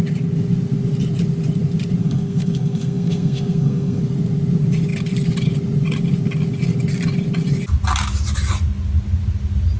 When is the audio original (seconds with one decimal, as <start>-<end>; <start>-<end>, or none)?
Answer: 0.0-2.0; 4.0-9.8